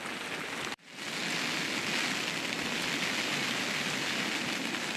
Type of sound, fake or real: real